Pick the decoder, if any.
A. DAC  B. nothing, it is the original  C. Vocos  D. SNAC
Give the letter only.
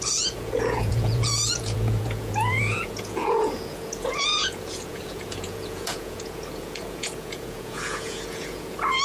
C